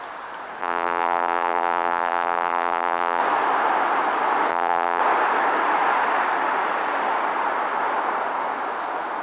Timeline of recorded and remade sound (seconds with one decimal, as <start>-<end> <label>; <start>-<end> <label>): 0.0-0.6 recorded; 0.6-3.2 remade; 3.2-4.5 recorded; 4.5-5.0 remade; 5.0-9.2 recorded